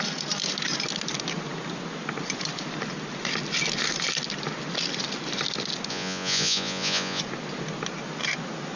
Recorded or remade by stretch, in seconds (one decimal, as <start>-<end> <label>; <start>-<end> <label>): 0.0-5.9 recorded; 5.9-7.2 remade; 7.2-8.8 recorded